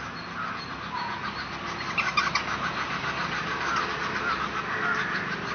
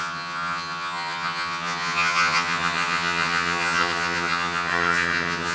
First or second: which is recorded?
first